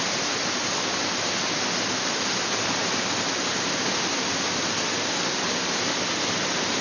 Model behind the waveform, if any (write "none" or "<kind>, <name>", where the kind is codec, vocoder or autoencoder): none